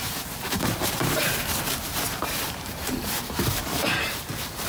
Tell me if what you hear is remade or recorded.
remade